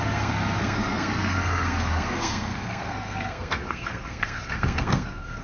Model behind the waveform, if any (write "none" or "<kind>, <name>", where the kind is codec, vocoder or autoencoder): codec, SNAC